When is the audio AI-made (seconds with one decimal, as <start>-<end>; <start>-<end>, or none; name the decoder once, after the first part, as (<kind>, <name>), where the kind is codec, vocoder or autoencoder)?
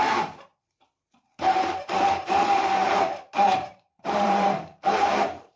0.0-5.6 (vocoder, BigVGAN v2)